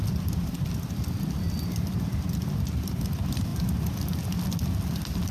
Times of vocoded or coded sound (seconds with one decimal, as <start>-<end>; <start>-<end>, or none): none